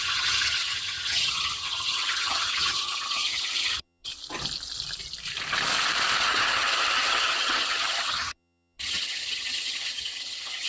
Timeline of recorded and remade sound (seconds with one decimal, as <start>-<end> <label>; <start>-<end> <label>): 0.0-4.1 remade; 4.1-6.2 recorded; 6.2-10.7 remade